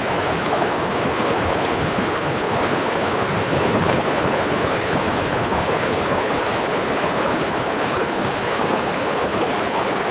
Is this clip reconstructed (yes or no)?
yes